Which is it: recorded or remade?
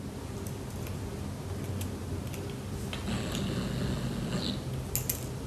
recorded